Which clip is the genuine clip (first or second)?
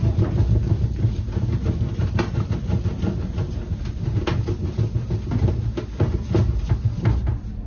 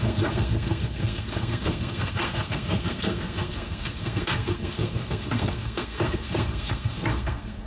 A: first